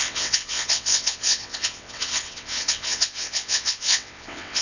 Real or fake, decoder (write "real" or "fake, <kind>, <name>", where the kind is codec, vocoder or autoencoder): fake, vocoder, WaveNeXt